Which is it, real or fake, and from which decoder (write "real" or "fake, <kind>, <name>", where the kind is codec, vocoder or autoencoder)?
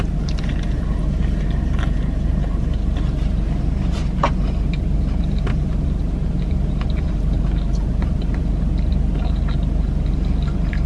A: real